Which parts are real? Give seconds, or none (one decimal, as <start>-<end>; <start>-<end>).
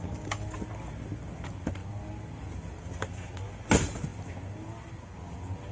0.0-5.7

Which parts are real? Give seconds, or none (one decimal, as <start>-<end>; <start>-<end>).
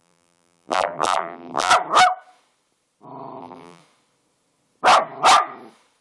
1.7-3.4; 3.8-6.0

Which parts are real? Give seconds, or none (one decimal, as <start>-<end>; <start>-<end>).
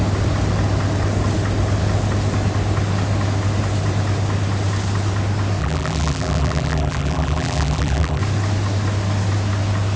0.0-5.6; 8.2-10.0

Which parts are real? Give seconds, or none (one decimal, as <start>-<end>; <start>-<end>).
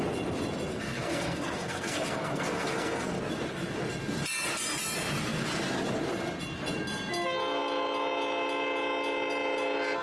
0.0-0.7; 3.2-10.0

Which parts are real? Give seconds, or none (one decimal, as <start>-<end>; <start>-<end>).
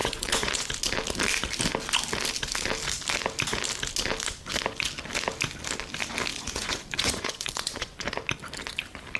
0.7-6.3; 8.2-9.2